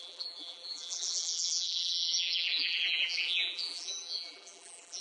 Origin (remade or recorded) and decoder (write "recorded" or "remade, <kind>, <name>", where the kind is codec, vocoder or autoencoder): remade, vocoder, BigVGAN v2